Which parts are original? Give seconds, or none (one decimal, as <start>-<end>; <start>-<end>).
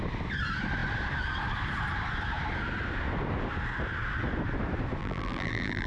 0.0-5.0